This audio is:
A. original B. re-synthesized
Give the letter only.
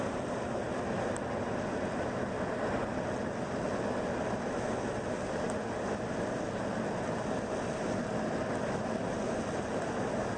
A